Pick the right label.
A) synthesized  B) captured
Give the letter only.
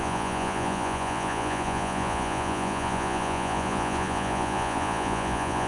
A